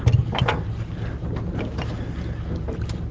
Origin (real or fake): real